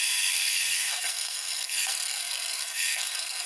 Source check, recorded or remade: remade